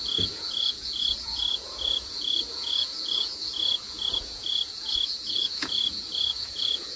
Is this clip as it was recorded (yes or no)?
no